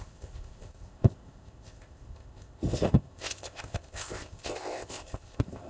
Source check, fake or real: fake